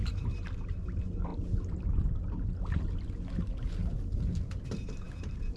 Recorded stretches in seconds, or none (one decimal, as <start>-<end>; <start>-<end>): 1.3-4.7

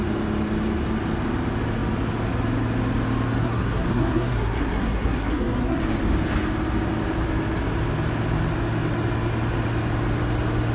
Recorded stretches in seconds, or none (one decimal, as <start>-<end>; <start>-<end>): 0.0-3.4; 5.8-10.7